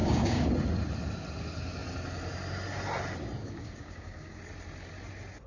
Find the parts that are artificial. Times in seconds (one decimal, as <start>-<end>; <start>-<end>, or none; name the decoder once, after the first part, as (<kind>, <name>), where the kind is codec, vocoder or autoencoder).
0.0-0.5 (codec, DAC); 3.4-4.4